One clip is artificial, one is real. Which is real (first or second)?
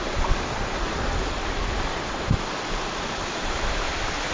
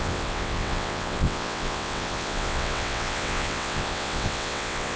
first